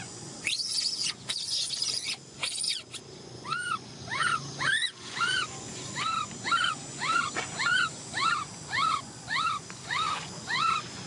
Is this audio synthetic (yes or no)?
yes